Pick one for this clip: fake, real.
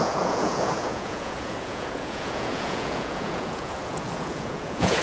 fake